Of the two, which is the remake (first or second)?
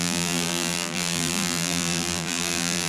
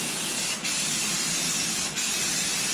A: first